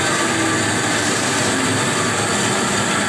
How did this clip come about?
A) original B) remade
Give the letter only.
A